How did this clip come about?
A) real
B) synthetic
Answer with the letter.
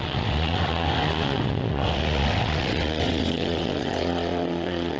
B